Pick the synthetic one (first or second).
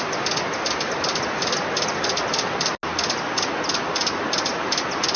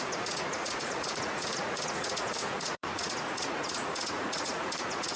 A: second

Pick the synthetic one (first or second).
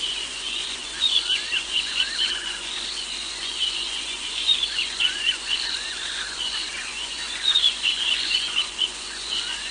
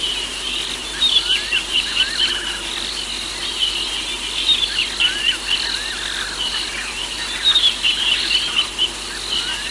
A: first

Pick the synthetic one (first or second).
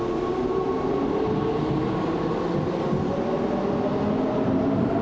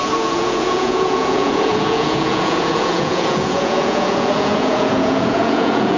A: second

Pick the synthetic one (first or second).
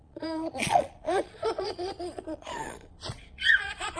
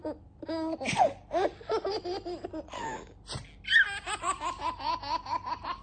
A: first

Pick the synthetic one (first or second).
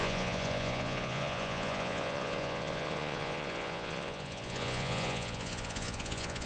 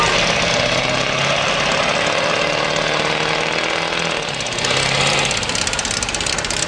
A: first